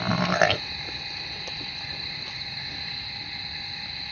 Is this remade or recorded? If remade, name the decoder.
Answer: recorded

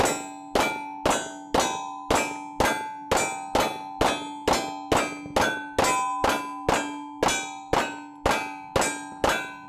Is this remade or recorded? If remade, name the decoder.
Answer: recorded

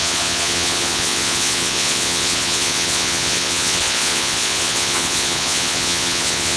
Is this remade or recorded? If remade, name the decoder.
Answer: remade, vocoder, Vocos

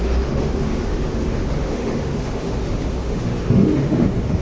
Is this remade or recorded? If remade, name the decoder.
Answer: remade, autoencoder, DAC-VAE